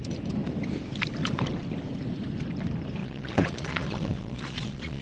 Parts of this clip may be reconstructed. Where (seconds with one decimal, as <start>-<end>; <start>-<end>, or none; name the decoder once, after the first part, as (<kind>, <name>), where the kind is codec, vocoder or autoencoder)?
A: 3.0-5.0 (vocoder, Vocos)